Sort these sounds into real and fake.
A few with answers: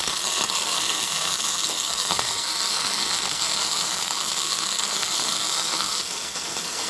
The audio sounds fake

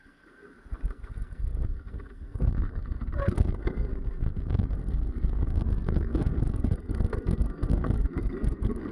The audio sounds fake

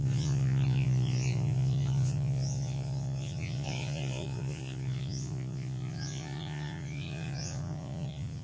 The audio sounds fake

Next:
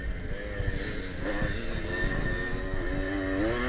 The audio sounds real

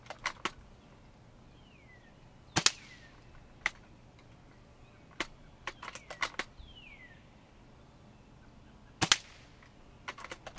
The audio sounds real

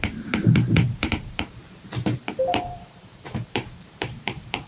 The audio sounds fake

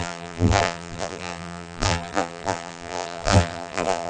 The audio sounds fake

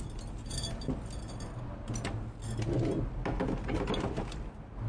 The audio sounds real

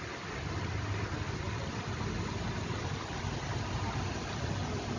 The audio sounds real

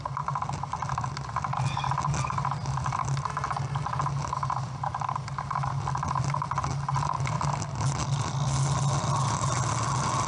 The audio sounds real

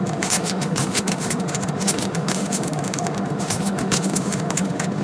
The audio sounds fake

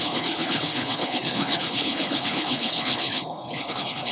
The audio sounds fake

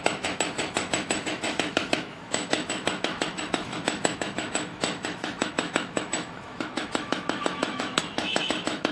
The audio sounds fake